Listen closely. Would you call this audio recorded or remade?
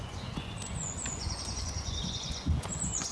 remade